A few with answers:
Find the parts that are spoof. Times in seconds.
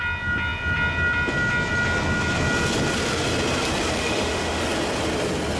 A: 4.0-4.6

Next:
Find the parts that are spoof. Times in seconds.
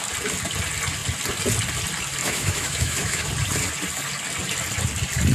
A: 2.2-3.3